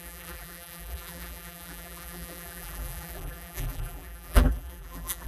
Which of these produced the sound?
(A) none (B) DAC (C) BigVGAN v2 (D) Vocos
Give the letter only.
C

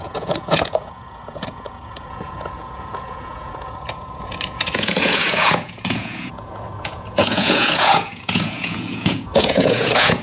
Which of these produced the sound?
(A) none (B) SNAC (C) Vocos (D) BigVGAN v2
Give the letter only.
C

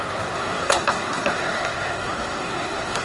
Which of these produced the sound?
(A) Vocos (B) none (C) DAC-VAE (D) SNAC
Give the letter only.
D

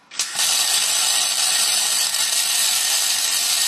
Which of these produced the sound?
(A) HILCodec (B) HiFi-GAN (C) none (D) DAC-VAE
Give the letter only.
C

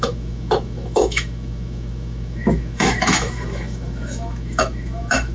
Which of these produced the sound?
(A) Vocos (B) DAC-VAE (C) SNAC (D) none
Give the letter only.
B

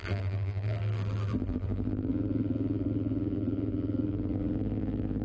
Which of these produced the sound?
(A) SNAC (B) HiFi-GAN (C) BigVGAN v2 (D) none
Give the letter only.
C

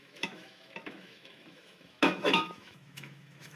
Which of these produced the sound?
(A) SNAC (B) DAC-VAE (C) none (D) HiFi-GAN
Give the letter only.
B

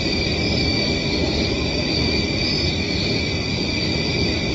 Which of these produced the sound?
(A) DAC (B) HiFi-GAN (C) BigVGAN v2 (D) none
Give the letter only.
D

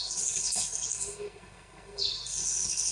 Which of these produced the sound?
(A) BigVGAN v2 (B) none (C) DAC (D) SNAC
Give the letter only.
D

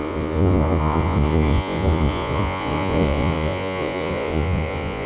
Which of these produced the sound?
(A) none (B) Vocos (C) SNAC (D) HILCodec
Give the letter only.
B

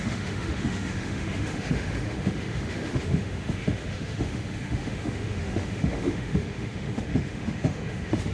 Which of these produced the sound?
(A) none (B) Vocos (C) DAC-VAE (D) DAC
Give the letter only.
C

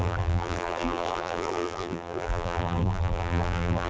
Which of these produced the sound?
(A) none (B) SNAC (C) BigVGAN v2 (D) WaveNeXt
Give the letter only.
C